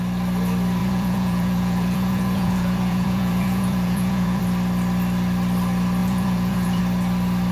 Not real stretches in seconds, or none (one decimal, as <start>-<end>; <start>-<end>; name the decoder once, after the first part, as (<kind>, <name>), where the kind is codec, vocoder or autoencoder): 0.8-4.4 (vocoder, Vocos); 6.0-6.8

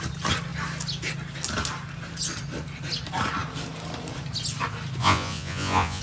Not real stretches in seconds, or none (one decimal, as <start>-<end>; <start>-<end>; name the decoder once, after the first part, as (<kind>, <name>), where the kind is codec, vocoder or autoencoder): 5.0-6.0 (vocoder, Vocos)

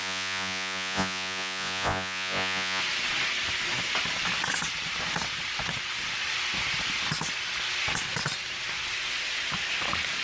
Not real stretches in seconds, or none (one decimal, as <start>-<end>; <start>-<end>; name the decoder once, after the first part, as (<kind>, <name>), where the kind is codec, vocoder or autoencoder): 0.0-2.8 (vocoder, Vocos)

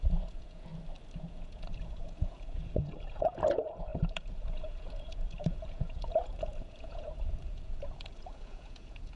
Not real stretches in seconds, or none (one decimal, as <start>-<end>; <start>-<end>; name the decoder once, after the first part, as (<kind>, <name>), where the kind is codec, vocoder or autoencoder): 0.0-0.7 (vocoder, Vocos); 1.2-9.2

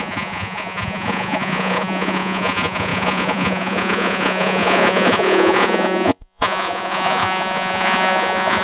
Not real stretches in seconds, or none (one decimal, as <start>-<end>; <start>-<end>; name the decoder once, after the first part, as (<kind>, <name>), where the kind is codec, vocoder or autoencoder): 0.0-8.6 (vocoder, Vocos)

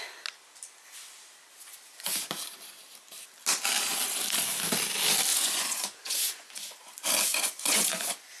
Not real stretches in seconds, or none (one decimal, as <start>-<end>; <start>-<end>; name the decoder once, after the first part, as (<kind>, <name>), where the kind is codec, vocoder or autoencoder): 5.3-6.8 (vocoder, Vocos); 7.3-8.4

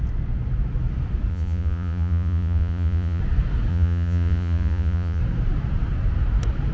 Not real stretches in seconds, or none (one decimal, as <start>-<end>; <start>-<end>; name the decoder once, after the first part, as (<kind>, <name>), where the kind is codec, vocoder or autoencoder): 1.3-3.2 (vocoder, Vocos); 3.7-5.2